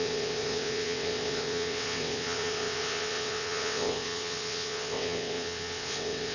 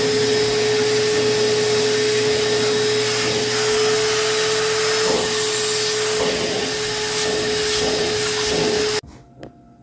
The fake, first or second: first